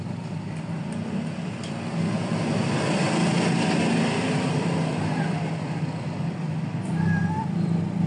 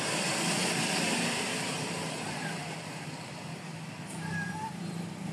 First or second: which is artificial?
second